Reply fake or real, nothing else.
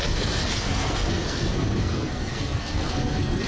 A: fake